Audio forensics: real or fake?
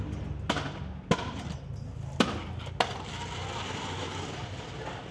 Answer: real